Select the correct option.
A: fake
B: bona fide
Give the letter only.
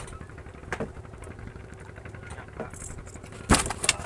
B